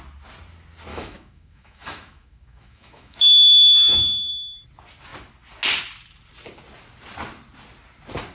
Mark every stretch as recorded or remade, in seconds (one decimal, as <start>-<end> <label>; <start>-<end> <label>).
0.0-0.9 recorded; 0.9-4.3 remade; 4.3-8.3 recorded